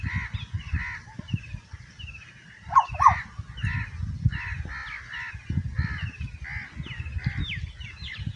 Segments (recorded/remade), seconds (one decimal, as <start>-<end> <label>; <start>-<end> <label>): 0.0-8.4 recorded